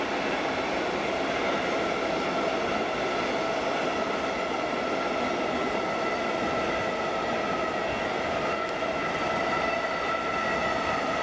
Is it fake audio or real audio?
real